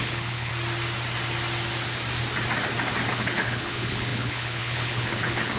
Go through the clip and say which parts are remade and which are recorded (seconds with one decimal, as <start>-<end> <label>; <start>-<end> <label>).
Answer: 0.0-0.5 remade; 0.5-3.1 recorded; 3.1-5.6 remade